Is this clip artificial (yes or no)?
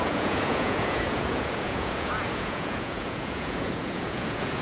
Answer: yes